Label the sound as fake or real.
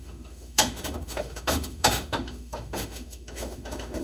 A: fake